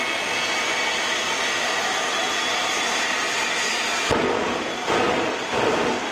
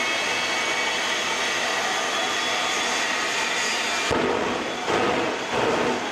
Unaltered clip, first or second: second